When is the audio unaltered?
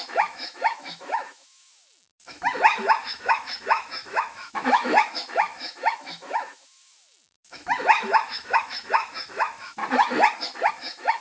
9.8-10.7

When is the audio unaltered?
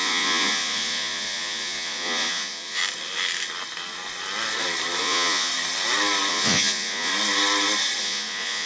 2.8-5.0; 5.5-6.3; 7.1-8.0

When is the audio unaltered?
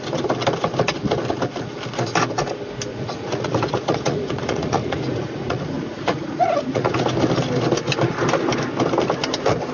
0.0-2.9; 6.9-9.7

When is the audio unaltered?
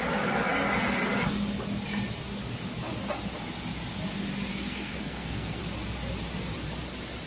0.0-4.5; 5.6-7.3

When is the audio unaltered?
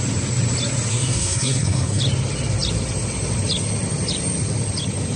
0.0-0.9; 2.0-5.2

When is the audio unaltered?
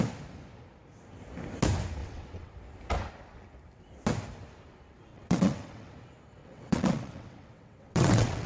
0.0-2.0; 2.5-5.1; 5.9-6.4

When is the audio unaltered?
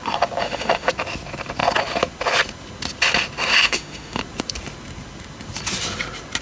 0.0-0.4; 0.9-3.5; 4.2-6.4